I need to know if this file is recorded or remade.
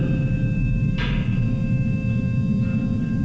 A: recorded